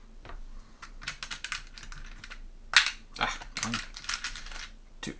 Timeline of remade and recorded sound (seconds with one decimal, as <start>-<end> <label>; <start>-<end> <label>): 0.0-5.2 recorded